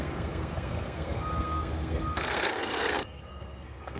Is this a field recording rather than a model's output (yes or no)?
no